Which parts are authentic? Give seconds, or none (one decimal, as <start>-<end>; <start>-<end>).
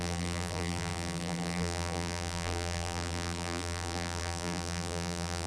none